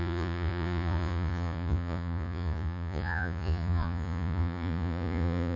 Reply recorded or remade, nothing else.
remade